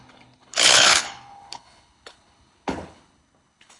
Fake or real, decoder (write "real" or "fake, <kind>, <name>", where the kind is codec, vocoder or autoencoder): fake, codec, HILCodec